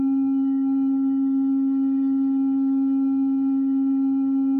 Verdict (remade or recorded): remade